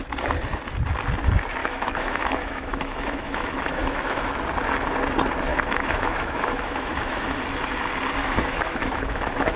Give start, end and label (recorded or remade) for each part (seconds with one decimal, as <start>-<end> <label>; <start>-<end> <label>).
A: 0.0-1.6 recorded; 1.6-4.3 remade; 4.3-5.5 recorded; 5.5-7.4 remade; 7.4-8.2 recorded; 8.2-9.6 remade